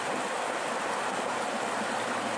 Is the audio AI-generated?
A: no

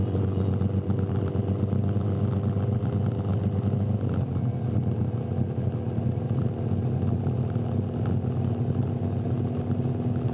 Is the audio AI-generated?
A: no